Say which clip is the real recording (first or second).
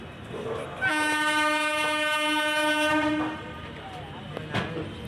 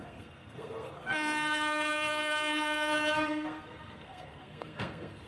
first